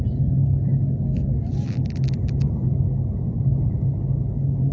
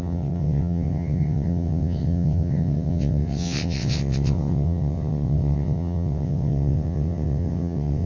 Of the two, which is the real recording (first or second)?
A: first